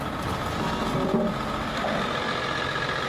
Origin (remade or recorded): recorded